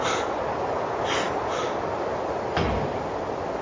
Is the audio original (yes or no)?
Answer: yes